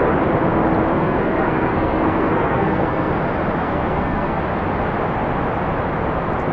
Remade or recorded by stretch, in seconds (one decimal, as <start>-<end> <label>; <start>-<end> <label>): 0.0-0.9 recorded; 0.9-3.1 remade; 3.1-3.6 recorded; 3.6-4.4 remade; 4.4-6.5 recorded